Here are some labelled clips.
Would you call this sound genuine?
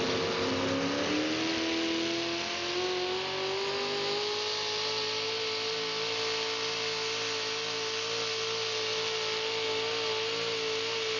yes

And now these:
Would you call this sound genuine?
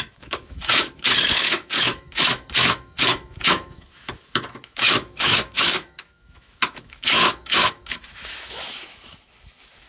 no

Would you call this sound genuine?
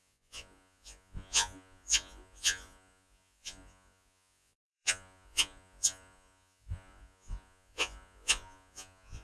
no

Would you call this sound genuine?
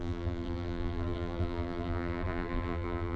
no